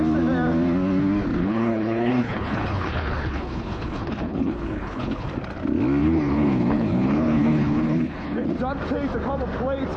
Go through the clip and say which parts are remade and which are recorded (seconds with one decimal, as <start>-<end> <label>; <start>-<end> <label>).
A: 0.0-1.4 recorded; 1.4-5.3 remade; 5.3-6.0 recorded; 6.0-8.5 remade; 8.5-10.0 recorded